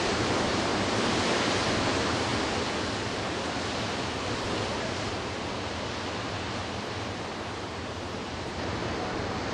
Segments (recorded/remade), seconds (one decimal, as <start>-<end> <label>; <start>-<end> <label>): 0.0-0.7 remade; 0.7-1.5 recorded; 1.5-2.3 remade; 2.3-6.6 recorded; 6.6-8.8 remade; 8.8-9.5 recorded